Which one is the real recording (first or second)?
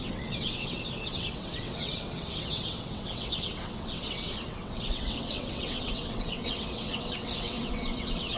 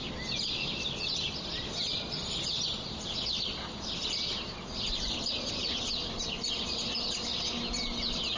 second